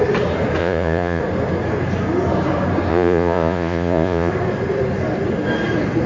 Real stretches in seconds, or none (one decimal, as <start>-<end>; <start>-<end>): 0.0-0.6; 1.2-2.9; 4.3-6.1